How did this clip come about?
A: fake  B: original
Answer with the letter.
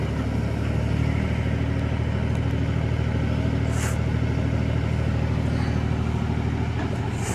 B